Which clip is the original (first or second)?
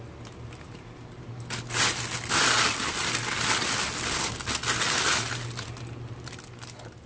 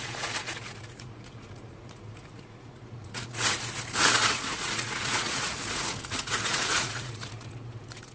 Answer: first